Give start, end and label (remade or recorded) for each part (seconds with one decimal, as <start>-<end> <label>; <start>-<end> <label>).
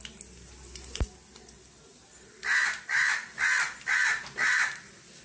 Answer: 0.0-5.2 recorded